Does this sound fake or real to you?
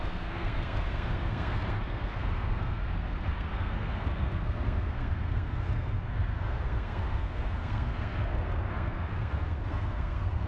fake